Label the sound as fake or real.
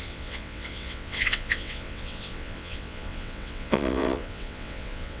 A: fake